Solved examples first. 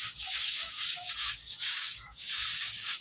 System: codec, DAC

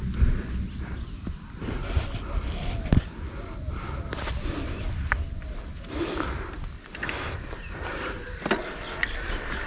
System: none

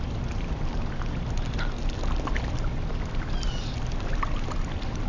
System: none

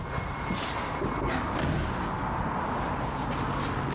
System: none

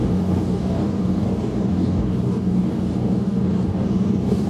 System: codec, DAC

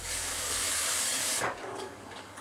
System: codec, DAC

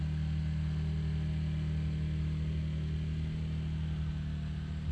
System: none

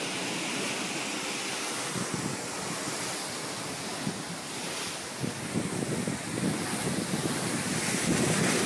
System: none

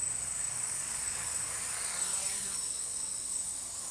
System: codec, DAC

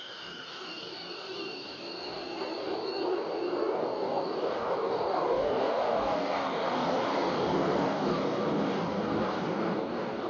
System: codec, DAC